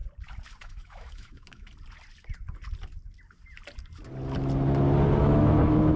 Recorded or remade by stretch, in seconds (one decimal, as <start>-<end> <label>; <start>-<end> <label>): 0.0-0.6 recorded; 0.6-1.7 remade; 1.7-5.2 recorded; 5.2-6.0 remade